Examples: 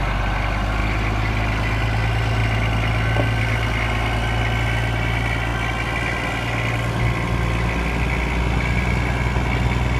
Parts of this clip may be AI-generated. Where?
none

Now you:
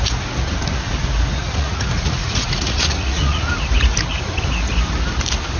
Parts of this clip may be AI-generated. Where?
1.4-3.5 (vocoder, Vocos)

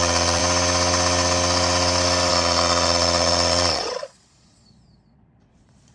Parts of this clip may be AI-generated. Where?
0.0-0.4 (vocoder, Vocos); 2.3-5.9